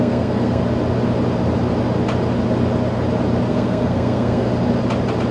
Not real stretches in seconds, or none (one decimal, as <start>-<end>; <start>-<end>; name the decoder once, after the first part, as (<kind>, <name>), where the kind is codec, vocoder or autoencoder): 0.0-0.6 (codec, SNAC); 3.5-4.5

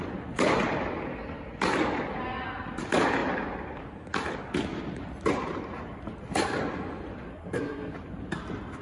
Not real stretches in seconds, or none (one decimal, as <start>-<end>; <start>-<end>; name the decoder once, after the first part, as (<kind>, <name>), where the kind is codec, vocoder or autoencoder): 7.3-7.9 (codec, SNAC)

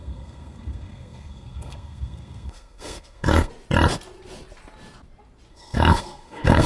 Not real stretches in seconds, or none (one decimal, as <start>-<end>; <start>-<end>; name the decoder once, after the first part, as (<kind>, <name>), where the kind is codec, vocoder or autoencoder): 0.0-3.5 (codec, SNAC); 5.5-6.7